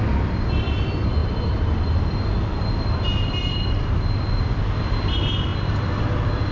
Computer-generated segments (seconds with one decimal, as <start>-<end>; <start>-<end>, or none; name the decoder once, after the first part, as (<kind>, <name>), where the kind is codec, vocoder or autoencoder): none